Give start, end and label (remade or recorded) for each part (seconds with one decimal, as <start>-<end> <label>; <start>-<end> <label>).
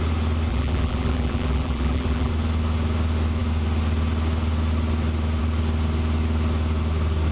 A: 0.0-0.5 recorded; 0.5-2.3 remade; 2.3-7.3 recorded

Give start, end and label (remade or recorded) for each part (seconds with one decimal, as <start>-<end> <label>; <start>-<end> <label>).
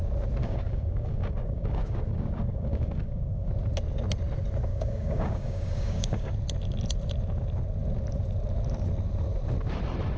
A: 0.0-0.4 recorded; 0.4-3.5 remade; 3.5-4.7 recorded; 4.7-6.3 remade; 6.3-10.2 recorded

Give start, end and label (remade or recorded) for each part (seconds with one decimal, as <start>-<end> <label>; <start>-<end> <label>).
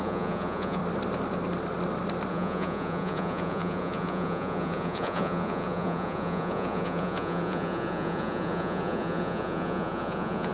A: 0.0-0.8 remade; 0.8-2.3 recorded; 2.3-10.5 remade